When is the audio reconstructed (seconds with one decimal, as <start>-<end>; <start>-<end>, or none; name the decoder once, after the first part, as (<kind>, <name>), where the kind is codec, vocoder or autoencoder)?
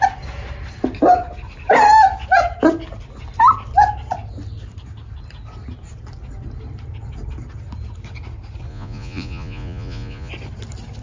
8.7-10.3 (vocoder, Vocos)